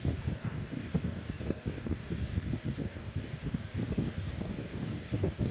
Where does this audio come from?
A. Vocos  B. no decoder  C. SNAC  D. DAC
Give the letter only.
D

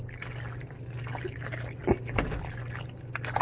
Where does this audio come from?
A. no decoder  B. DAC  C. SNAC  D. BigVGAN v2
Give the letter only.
A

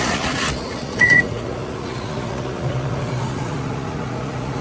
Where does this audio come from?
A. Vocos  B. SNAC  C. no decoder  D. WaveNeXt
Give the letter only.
A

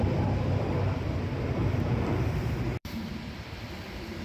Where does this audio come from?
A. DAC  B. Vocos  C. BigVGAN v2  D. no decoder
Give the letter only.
C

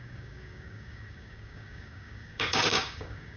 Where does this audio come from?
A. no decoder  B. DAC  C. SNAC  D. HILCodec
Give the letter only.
B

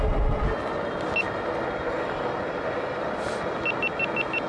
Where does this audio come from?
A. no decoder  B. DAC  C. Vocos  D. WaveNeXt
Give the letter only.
A